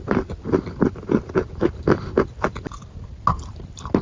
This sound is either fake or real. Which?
real